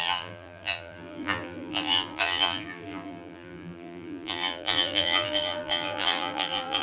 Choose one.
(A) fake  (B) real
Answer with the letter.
A